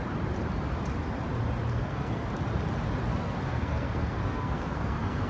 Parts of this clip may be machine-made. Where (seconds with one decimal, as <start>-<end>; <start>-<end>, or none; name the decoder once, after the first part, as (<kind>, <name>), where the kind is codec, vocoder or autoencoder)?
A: 1.7-2.3 (codec, SNAC); 3.1-5.3